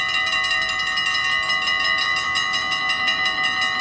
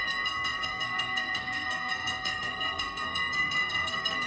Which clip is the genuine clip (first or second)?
first